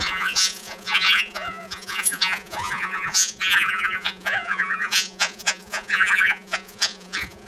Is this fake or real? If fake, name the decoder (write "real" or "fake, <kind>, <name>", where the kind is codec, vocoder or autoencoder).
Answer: fake, vocoder, Vocos